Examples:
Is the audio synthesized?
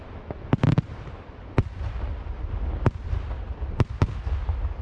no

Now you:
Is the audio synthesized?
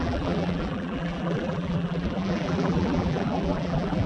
yes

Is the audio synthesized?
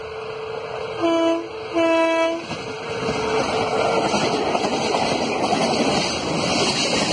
no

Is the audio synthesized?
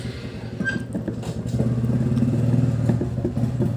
no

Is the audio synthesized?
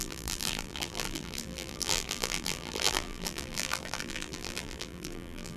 yes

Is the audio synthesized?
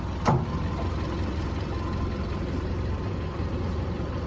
yes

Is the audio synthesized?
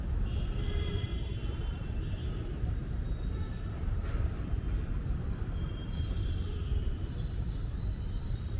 yes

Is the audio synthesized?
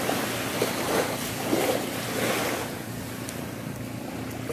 no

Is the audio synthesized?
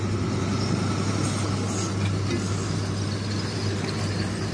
no